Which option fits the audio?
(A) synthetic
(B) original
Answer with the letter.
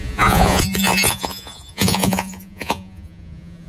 A